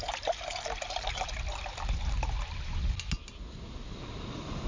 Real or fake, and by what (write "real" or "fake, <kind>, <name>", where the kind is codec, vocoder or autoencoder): real